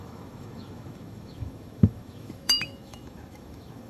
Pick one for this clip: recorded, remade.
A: remade